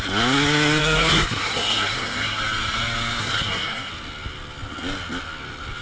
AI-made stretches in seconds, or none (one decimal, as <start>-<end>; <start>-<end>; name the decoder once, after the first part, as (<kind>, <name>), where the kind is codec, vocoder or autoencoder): 0.8-2.4 (codec, SNAC); 3.2-3.9